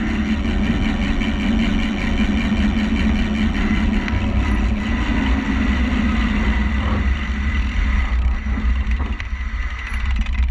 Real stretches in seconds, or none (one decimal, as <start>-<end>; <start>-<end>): 0.0-10.5